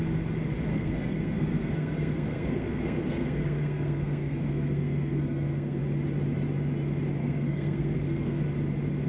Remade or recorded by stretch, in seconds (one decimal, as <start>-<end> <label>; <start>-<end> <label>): 0.0-0.7 recorded; 0.7-5.8 remade; 5.8-7.2 recorded; 7.2-8.4 remade; 8.4-9.1 recorded

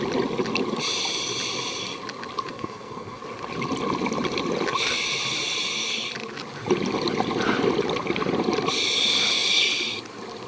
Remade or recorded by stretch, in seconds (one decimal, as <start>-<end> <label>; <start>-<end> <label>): 0.0-2.5 recorded; 2.5-3.2 remade; 3.2-10.5 recorded

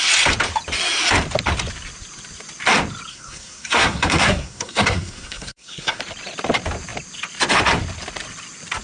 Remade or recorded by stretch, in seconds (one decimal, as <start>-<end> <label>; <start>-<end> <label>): 0.0-3.1 recorded; 3.1-6.0 remade; 6.0-8.8 recorded

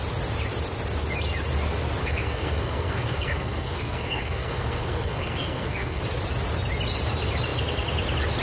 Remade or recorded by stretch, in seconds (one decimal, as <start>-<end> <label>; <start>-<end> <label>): 0.0-2.0 recorded; 2.0-6.0 remade; 6.0-8.4 recorded

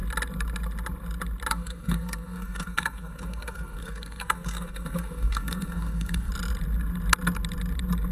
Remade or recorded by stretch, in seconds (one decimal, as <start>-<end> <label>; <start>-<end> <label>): 0.0-1.5 recorded; 1.5-6.3 remade; 6.3-8.1 recorded

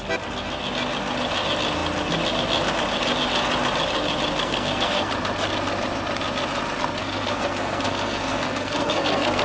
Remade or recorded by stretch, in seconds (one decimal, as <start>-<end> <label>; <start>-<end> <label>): 0.0-4.4 recorded; 4.4-5.1 remade; 5.1-7.0 recorded; 7.0-9.4 remade

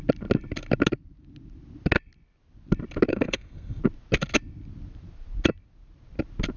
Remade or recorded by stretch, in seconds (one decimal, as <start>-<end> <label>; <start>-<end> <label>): 0.0-3.1 recorded; 3.1-3.8 remade; 3.8-6.6 recorded